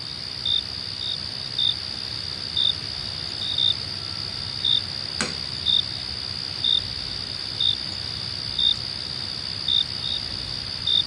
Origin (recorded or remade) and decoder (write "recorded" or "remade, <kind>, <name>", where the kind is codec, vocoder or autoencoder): recorded